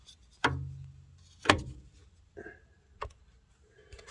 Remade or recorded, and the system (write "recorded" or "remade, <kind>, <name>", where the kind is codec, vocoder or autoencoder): recorded